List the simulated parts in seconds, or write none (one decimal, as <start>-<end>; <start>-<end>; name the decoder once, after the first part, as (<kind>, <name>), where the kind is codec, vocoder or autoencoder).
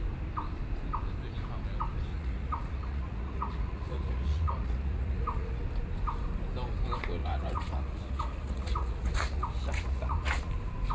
2.1-5.6 (vocoder, Vocos); 7.2-10.5